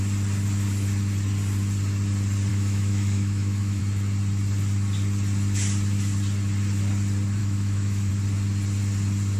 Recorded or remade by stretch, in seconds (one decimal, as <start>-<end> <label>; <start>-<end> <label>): 0.0-2.5 recorded; 2.5-3.8 remade; 3.8-7.4 recorded; 7.4-8.1 remade; 8.1-9.4 recorded